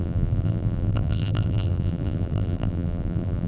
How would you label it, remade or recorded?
remade